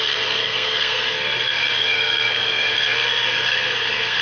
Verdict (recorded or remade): remade